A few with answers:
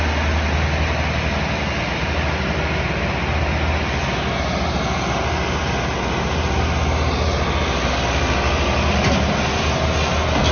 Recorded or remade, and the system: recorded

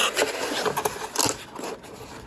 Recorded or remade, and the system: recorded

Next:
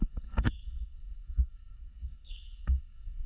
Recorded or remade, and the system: remade, codec, SNAC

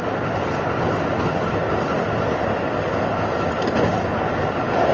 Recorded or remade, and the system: recorded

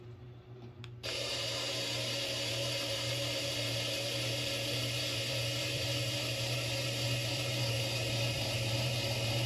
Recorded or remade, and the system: remade, vocoder, BigVGAN v2